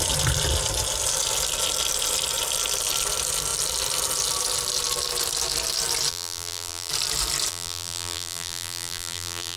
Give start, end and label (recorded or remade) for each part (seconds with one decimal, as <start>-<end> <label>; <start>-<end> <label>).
0.0-6.1 recorded; 6.1-6.9 remade; 6.9-7.5 recorded; 7.5-9.6 remade